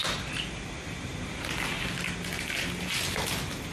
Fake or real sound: real